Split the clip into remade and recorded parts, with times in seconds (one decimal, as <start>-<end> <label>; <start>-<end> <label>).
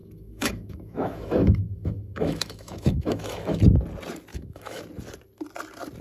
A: 0.0-3.6 remade; 3.6-4.3 recorded; 4.3-4.8 remade; 4.8-6.0 recorded